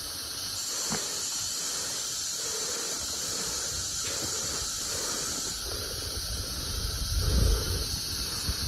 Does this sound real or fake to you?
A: real